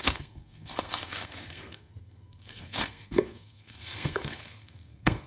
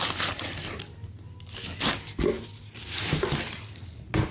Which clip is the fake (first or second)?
first